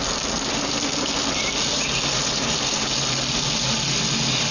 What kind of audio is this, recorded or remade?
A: recorded